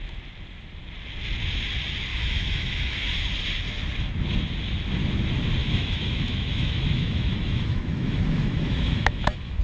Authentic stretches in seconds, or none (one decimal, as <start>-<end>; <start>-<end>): 0.0-2.1; 3.1-5.6